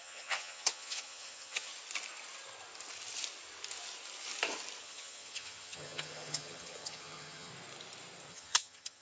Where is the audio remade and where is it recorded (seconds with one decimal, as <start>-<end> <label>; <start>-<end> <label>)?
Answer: 0.0-1.7 remade; 1.7-4.8 recorded; 4.8-7.5 remade; 7.5-8.3 recorded; 8.3-9.0 remade